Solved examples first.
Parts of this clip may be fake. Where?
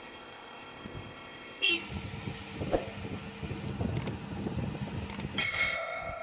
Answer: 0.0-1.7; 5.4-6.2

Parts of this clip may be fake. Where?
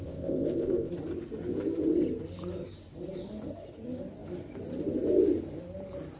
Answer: 0.0-0.9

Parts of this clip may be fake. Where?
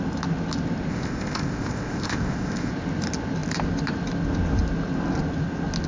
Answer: 0.9-2.7